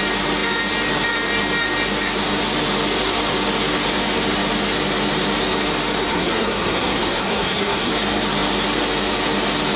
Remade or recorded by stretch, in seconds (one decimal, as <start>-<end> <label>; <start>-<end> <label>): 0.0-6.1 recorded; 6.1-7.9 remade; 7.9-9.8 recorded

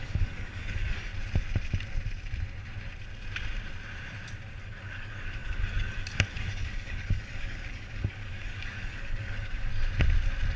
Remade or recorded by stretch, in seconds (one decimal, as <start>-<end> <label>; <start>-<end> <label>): 0.0-1.1 remade; 1.1-4.6 recorded; 4.6-9.7 remade; 9.7-10.6 recorded

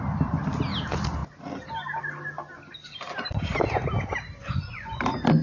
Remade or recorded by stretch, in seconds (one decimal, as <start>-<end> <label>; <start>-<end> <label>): 0.0-4.4 recorded; 4.4-5.0 remade; 5.0-5.4 recorded

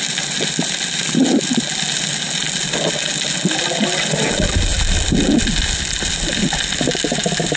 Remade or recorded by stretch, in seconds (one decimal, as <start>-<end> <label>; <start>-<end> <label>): 0.0-7.6 recorded